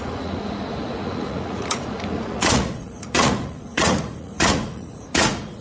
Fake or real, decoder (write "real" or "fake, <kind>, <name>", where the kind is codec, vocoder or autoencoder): fake, vocoder, Vocos